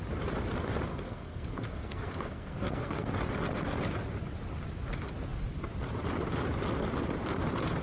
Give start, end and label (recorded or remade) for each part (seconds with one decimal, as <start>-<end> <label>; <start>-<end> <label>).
0.0-0.9 recorded; 0.9-3.1 remade; 3.1-7.8 recorded